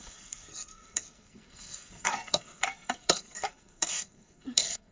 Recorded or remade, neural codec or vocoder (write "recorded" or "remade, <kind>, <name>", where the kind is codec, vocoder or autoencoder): remade, codec, SNAC